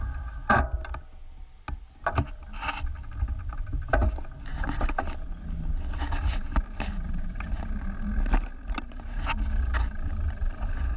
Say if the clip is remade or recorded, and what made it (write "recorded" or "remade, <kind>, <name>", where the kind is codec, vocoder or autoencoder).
recorded